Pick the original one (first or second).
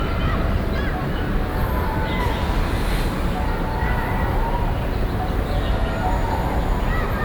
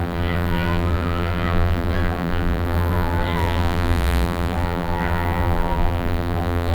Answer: first